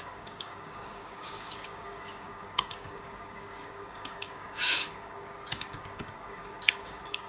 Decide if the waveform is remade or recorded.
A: remade